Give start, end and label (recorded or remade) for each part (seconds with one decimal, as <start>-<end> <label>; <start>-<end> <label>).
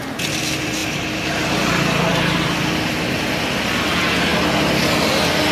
0.0-0.8 recorded; 0.8-1.7 remade; 1.7-2.1 recorded; 2.1-2.9 remade; 2.9-5.5 recorded